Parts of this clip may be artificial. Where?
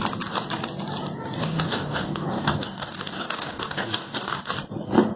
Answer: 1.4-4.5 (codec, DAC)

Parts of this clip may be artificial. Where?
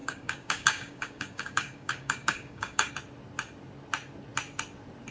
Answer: 0.0-2.9 (codec, DAC)